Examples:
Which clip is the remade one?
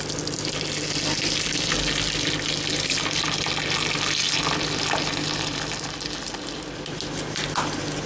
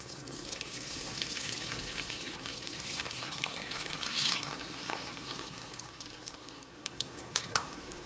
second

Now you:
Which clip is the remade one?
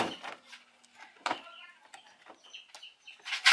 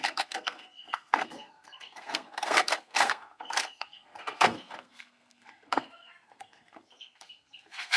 second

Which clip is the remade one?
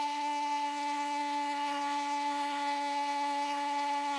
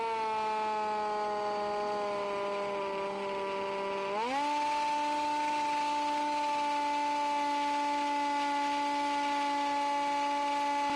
first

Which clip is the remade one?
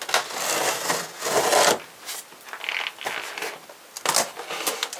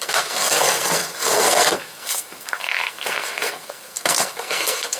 second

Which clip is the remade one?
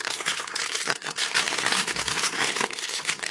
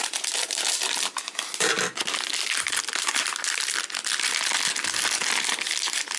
first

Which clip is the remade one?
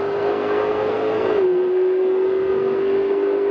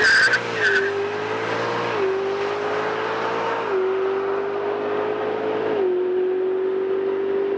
first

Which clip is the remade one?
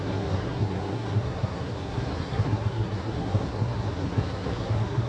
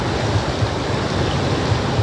first